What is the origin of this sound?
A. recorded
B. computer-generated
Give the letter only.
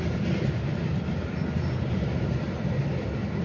A